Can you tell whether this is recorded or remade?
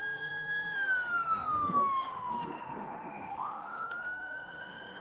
remade